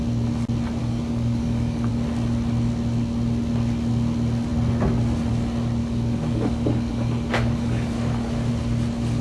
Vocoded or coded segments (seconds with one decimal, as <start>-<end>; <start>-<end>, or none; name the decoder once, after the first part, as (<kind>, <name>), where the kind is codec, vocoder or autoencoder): 0.8-1.9 (codec, DAC); 5.8-8.5